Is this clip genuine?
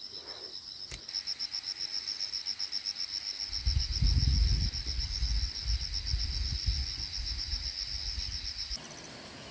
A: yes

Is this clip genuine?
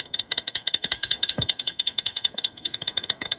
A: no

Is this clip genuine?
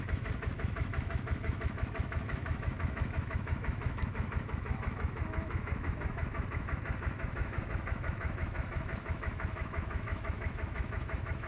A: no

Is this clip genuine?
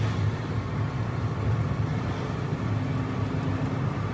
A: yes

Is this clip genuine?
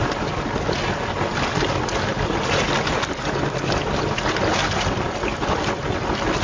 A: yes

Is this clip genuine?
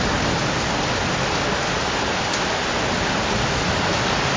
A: yes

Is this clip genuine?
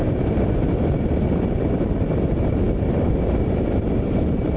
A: no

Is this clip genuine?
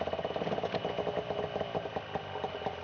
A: yes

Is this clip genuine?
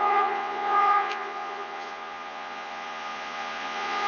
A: no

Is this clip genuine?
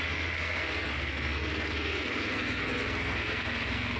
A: no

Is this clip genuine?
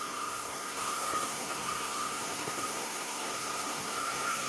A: no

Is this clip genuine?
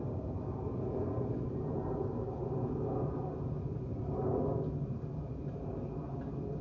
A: yes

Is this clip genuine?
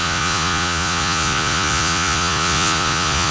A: no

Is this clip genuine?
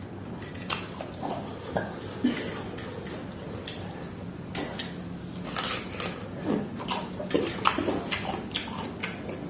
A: yes